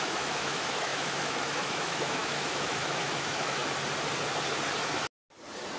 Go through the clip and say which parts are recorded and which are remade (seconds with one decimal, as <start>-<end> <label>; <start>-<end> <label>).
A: 0.0-3.6 remade; 3.6-5.8 recorded